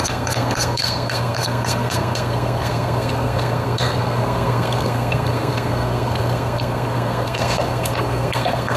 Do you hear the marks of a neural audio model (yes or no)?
yes